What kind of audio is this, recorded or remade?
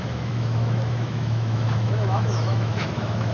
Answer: remade